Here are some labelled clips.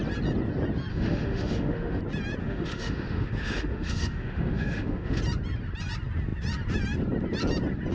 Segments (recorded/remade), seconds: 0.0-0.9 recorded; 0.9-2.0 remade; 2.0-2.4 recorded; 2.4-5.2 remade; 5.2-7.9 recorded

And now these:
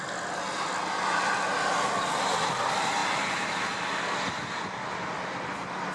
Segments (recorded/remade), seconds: 0.0-5.9 recorded

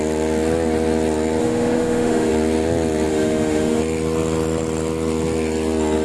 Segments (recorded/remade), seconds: 0.0-1.4 recorded; 1.4-2.3 remade; 2.3-3.1 recorded; 3.1-3.8 remade; 3.8-6.0 recorded